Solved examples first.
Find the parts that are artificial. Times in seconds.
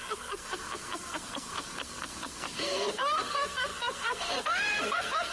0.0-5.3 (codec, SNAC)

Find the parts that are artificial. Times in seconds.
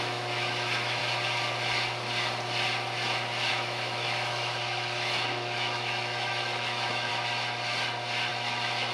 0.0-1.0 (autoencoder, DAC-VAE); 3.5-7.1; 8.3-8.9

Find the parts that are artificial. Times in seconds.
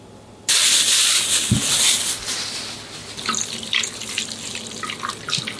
none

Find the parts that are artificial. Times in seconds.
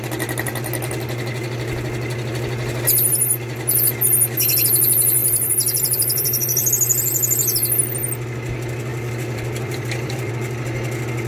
5.2-6.7 (vocoder, BigVGAN v2); 8.9-10.3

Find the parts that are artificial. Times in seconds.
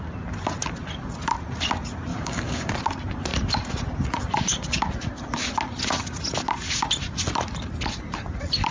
2.1-2.7 (codec, DAC)